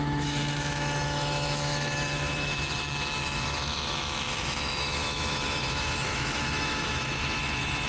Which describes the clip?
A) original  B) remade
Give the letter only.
B